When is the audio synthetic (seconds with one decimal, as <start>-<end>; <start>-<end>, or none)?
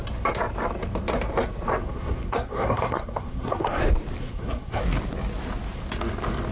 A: 1.8-3.8; 4.2-4.8